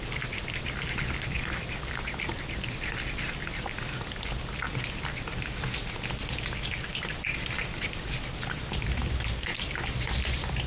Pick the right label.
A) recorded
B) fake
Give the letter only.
A